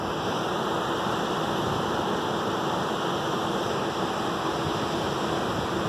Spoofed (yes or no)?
no